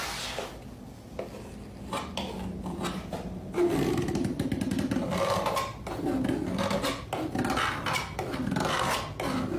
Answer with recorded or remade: recorded